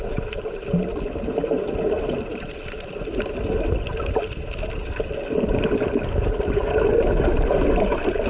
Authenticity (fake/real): real